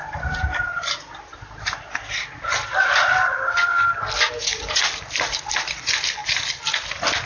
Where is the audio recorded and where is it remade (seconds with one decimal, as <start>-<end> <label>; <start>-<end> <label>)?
0.0-7.3 recorded